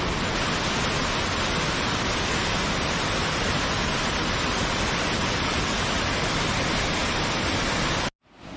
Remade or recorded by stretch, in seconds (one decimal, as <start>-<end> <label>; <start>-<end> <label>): 0.0-8.6 recorded